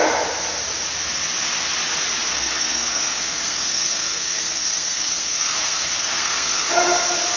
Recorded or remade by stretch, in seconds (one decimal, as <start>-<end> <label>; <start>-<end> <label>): 0.0-2.3 recorded; 2.3-6.7 remade; 6.7-7.4 recorded